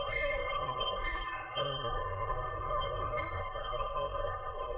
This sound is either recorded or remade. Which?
remade